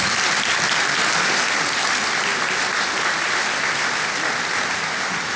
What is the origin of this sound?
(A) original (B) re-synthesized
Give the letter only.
A